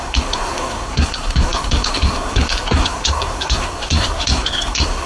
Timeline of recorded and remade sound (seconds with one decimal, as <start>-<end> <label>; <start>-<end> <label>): 0.0-5.1 remade